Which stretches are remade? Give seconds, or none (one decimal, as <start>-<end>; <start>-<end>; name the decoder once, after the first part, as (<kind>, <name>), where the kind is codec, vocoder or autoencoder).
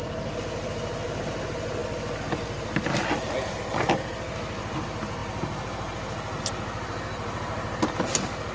none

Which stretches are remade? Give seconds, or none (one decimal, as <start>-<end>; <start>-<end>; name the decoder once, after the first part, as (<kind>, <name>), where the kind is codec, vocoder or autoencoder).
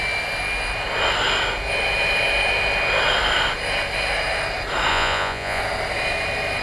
4.9-5.6 (vocoder, Vocos)